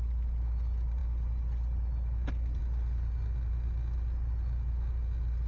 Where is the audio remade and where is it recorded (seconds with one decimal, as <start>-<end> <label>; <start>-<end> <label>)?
0.0-5.5 recorded